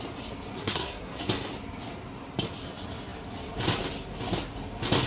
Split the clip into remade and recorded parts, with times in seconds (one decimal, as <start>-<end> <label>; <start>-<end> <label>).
0.0-0.6 recorded; 0.6-1.2 remade; 1.2-5.1 recorded